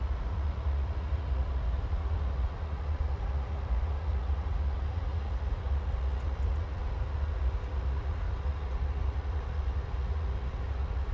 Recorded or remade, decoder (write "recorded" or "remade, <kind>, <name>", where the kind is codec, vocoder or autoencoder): remade, vocoder, Vocos